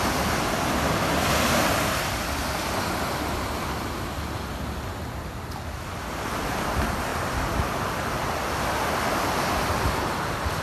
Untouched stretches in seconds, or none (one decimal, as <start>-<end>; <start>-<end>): 0.0-10.6